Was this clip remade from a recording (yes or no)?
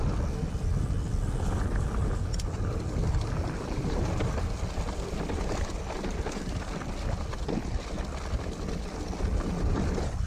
no